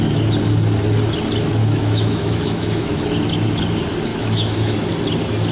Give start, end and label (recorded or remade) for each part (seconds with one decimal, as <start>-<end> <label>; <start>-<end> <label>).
0.0-1.6 recorded; 1.6-3.0 remade; 3.0-4.1 recorded; 4.1-4.9 remade; 4.9-5.5 recorded